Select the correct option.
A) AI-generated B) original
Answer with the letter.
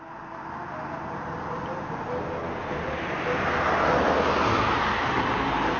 B